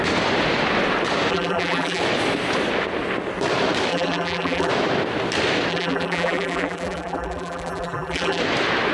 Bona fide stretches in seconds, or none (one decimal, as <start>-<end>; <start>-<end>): 0.0-1.3; 2.0-3.9; 4.7-5.7; 8.4-8.9